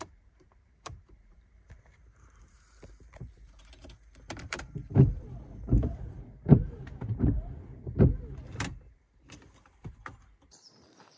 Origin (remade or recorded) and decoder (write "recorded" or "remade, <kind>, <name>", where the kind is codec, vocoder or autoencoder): remade, vocoder, BigVGAN v2